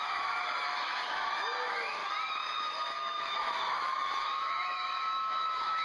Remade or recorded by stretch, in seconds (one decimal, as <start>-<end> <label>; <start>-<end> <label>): 0.0-2.0 remade; 2.0-2.6 recorded; 2.6-5.8 remade